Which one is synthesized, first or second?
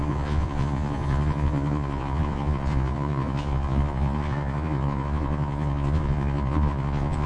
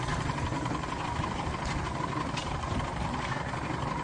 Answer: first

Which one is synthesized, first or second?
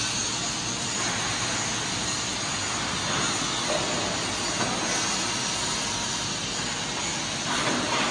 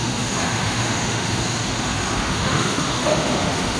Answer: second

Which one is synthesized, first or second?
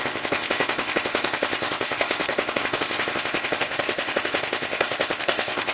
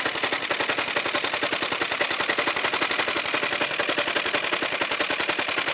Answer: first